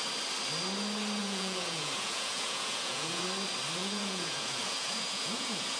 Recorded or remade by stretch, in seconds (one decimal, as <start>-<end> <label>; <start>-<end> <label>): 0.0-1.2 recorded; 1.2-3.2 remade; 3.2-3.8 recorded; 3.8-5.8 remade